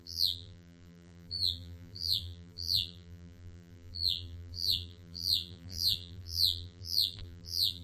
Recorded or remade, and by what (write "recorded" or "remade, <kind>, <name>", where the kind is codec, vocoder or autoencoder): remade, vocoder, BigVGAN v2